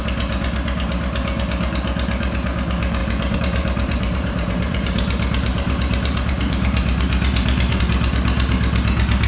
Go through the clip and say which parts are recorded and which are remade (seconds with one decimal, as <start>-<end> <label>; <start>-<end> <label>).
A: 0.0-3.0 recorded; 3.0-7.8 remade; 7.8-9.3 recorded